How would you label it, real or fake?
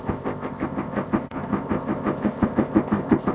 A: fake